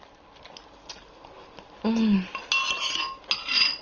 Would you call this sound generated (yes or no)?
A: no